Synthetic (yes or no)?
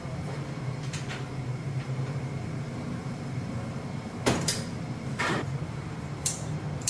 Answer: yes